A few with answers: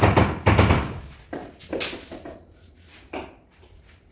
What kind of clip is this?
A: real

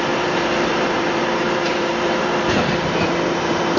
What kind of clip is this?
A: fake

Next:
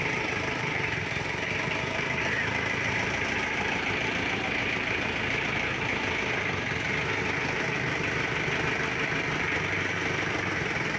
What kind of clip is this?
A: real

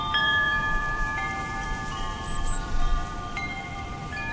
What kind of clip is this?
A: fake